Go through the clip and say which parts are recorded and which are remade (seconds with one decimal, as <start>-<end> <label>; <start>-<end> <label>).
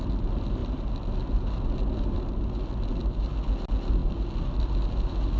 0.0-5.4 recorded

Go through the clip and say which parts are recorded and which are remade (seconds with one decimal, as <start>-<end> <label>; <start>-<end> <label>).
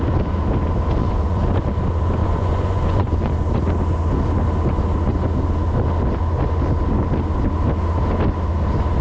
0.0-1.0 recorded; 1.0-1.6 remade; 1.6-2.2 recorded; 2.2-3.3 remade; 3.3-9.0 recorded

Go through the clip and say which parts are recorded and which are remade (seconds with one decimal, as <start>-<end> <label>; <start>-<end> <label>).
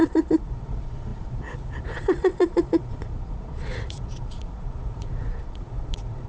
0.0-6.3 remade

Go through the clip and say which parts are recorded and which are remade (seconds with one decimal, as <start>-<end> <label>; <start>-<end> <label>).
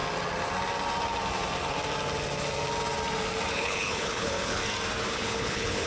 0.0-3.5 recorded; 3.5-4.6 remade; 4.6-5.1 recorded; 5.1-5.9 remade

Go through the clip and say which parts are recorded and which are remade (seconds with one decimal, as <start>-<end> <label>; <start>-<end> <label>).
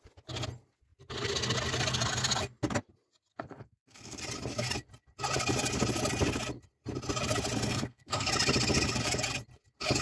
0.0-3.3 recorded; 3.3-4.2 remade; 4.2-7.7 recorded; 7.7-8.3 remade; 8.3-10.0 recorded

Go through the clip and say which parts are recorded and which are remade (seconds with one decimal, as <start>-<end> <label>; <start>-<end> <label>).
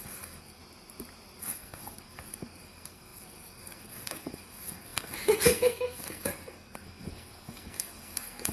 0.0-0.6 remade; 0.6-1.4 recorded; 1.4-8.5 remade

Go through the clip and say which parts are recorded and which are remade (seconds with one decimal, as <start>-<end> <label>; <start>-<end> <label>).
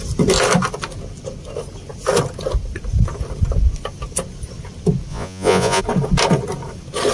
0.0-5.1 recorded; 5.1-5.8 remade; 5.8-7.1 recorded